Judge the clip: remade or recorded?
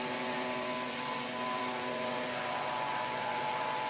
remade